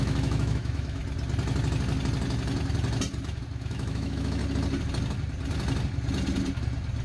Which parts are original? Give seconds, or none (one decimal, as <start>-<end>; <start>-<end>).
1.0-3.5; 4.4-7.0